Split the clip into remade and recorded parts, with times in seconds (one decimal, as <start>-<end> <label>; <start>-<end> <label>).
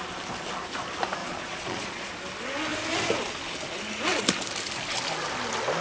0.0-1.2 recorded; 1.2-2.1 remade; 2.1-5.8 recorded